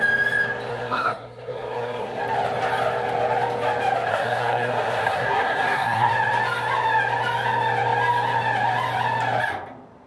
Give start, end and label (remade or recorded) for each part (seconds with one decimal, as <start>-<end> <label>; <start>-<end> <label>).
0.0-0.7 recorded; 0.7-2.2 remade; 2.2-4.1 recorded; 4.1-6.1 remade; 6.1-10.1 recorded